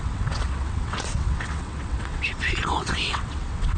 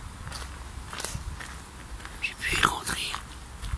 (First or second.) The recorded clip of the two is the second